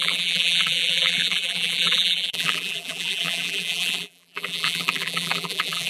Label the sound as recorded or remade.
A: remade